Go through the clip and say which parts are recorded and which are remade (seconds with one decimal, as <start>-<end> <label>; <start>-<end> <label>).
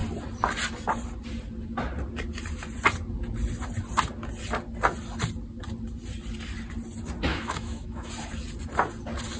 0.0-7.3 recorded; 7.3-8.1 remade; 8.1-9.4 recorded